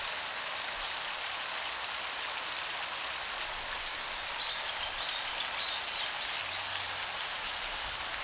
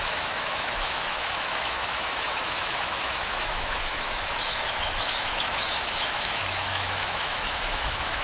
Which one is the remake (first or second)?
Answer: second